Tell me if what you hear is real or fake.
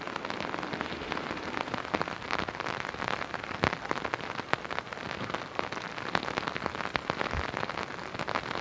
real